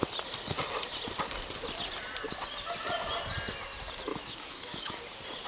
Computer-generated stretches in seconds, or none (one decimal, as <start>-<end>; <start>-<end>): 4.1-5.0